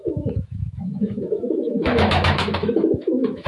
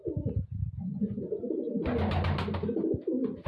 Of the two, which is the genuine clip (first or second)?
second